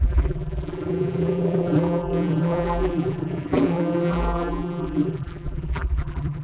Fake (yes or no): yes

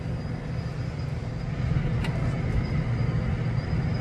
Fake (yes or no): no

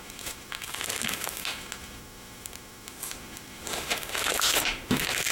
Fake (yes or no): yes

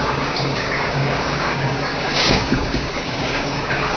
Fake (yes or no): yes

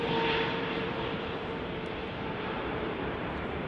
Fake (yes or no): yes